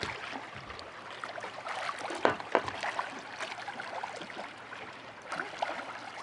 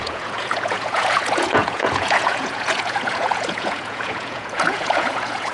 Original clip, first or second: first